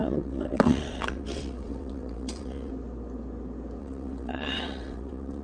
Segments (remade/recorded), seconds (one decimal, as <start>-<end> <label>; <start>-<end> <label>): 0.0-2.7 remade; 2.7-3.8 recorded; 3.8-5.4 remade